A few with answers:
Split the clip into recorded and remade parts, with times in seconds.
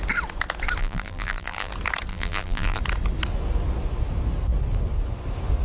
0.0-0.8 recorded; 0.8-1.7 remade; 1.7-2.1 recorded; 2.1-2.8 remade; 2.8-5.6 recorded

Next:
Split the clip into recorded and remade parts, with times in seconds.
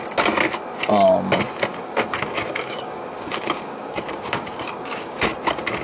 0.0-1.7 recorded; 1.7-5.2 remade; 5.2-5.8 recorded